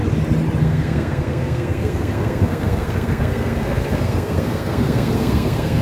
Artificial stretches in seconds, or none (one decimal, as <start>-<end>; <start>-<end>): 0.6-5.8